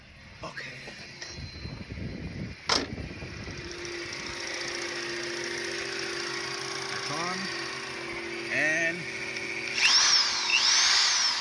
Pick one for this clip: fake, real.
real